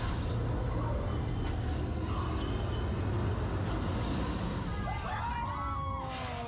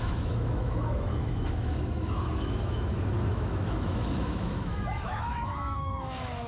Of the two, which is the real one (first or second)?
first